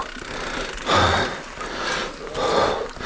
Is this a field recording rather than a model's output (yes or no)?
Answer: yes